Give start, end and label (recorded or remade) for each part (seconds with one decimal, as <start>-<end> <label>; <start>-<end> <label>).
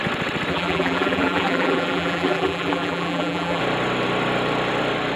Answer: 0.0-0.5 recorded; 0.5-3.6 remade; 3.6-5.2 recorded